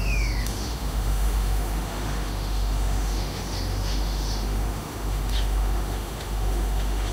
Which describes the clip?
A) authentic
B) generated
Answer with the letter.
B